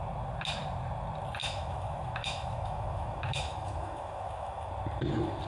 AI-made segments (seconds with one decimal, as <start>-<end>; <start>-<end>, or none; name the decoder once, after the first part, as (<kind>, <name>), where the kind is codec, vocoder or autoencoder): 1.4-4.7 (autoencoder, DAC-VAE)